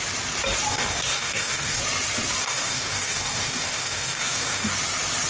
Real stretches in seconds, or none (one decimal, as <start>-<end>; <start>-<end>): 0.0-0.7; 1.8-2.4; 4.7-5.3